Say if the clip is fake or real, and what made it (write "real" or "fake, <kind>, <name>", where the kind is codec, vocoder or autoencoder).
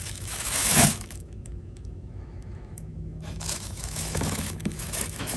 fake, autoencoder, DAC-VAE